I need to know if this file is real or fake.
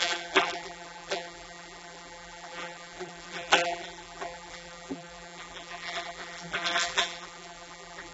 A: fake